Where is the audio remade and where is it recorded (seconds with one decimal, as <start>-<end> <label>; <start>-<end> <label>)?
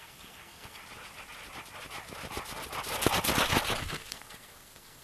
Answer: 0.0-0.8 remade; 0.8-3.8 recorded; 3.8-5.0 remade